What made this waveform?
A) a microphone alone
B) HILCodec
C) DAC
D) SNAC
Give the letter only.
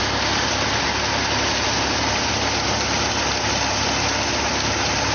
A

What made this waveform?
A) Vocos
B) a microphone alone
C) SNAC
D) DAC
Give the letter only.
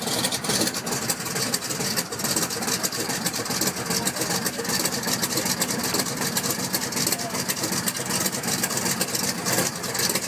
B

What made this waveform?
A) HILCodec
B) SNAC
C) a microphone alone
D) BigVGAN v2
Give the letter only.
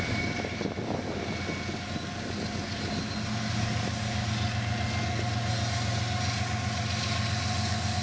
C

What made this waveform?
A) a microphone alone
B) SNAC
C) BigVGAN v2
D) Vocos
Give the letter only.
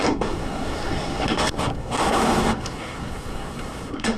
B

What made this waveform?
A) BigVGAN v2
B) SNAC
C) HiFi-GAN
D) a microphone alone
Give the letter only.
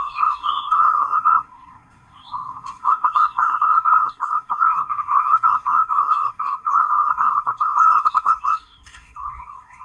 B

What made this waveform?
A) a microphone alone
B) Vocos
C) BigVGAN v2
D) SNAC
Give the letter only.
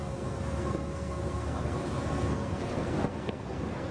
D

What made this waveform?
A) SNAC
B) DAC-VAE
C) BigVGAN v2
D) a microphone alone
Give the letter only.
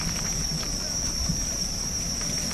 D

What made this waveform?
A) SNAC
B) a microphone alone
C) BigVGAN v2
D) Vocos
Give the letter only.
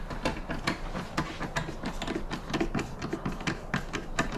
B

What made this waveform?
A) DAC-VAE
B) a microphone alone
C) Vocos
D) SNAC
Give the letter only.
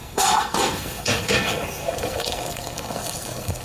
D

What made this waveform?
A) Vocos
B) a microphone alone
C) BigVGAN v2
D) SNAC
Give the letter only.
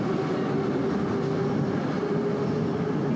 B